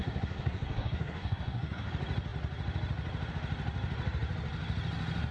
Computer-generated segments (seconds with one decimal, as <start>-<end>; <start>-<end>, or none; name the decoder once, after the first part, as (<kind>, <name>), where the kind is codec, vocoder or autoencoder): 0.0-1.9 (codec, SNAC)